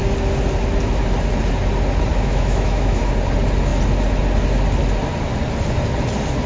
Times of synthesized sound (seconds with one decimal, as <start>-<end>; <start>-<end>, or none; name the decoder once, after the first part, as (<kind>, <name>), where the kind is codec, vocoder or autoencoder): 2.1-3.0 (autoencoder, DAC-VAE)